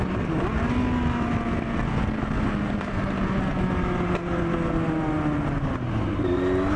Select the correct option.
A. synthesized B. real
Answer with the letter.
B